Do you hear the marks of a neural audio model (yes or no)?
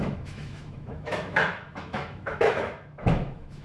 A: yes